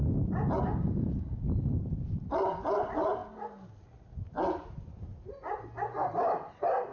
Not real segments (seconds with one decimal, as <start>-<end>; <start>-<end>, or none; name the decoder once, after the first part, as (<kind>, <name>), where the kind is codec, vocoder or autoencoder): none